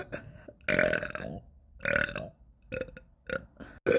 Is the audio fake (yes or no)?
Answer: no